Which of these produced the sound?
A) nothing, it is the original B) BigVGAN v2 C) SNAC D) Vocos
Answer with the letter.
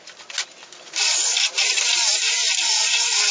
A